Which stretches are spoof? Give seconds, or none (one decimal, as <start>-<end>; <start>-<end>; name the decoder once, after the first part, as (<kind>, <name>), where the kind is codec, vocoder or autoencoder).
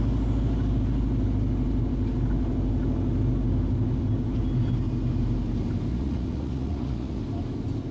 5.9-7.2 (vocoder, Vocos)